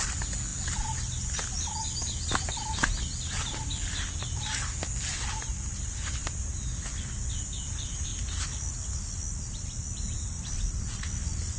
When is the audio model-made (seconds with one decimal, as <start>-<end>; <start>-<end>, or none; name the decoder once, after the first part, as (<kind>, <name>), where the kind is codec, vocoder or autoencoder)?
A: none

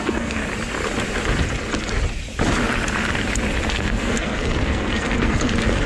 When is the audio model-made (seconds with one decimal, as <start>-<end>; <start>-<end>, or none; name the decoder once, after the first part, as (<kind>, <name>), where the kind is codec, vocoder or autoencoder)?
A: 0.0-0.4 (codec, SNAC); 3.7-5.9